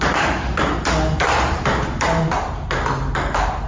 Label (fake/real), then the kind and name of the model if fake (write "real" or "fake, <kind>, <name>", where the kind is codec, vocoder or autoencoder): real